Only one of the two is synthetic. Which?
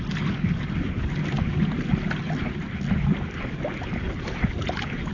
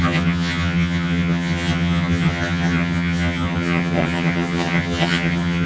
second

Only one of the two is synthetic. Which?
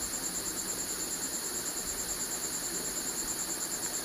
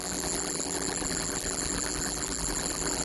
second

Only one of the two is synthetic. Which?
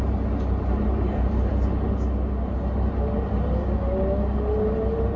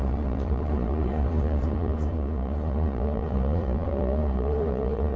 second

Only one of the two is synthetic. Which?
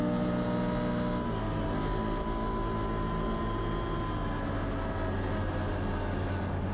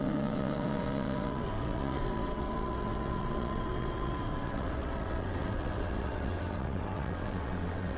second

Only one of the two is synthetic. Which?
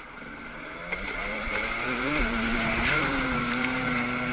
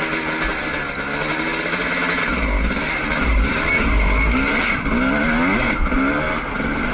first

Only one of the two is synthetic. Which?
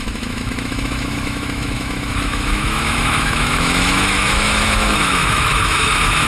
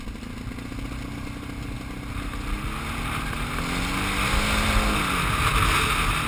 first